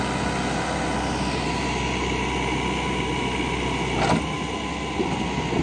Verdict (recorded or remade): recorded